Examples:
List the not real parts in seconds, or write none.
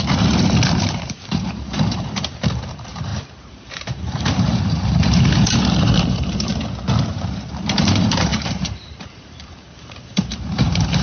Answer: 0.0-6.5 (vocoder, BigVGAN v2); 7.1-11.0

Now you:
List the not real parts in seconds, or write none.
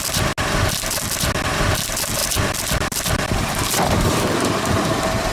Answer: 2.2-5.3 (vocoder, BigVGAN v2)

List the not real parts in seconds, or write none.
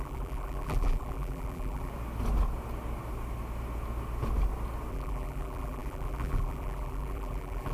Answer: 0.0-1.9 (vocoder, BigVGAN v2); 4.9-7.7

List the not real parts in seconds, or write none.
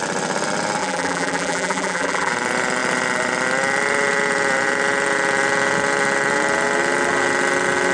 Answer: 0.8-2.3 (vocoder, BigVGAN v2)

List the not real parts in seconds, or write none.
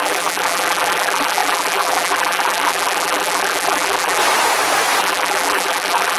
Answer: 0.0-4.2 (vocoder, BigVGAN v2); 5.0-6.2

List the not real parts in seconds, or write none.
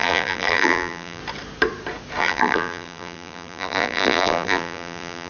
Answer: 0.0-1.2 (vocoder, BigVGAN v2); 2.2-5.3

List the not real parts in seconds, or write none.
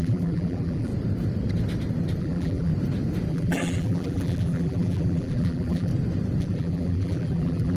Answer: 0.0-0.9 (vocoder, BigVGAN v2); 2.2-2.7; 3.3-5.9; 6.4-7.8